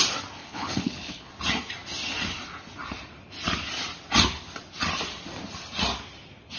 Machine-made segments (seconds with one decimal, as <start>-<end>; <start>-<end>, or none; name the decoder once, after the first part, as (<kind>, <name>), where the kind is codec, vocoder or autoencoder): 0.4-1.3 (codec, HILCodec)